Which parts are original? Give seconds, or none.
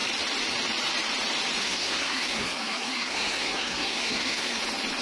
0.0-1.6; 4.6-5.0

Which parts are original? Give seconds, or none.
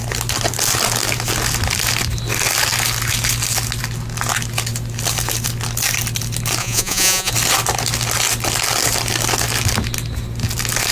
0.0-6.6; 7.3-10.9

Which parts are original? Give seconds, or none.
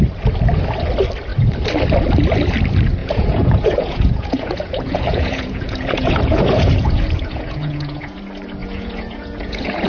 0.0-3.0; 8.2-8.6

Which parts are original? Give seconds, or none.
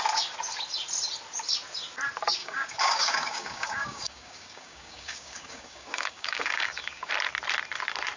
0.0-2.4; 7.1-8.2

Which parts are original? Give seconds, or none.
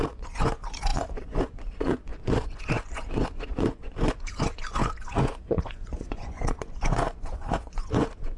none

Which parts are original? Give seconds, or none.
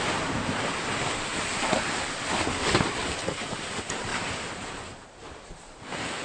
0.0-1.3; 2.1-4.1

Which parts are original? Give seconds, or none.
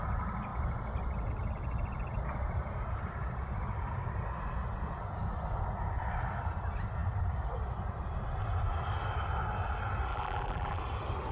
0.0-10.1; 10.8-11.3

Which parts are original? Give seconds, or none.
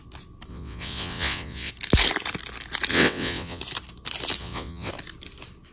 0.0-0.5; 1.7-2.9; 3.6-4.4; 4.9-5.7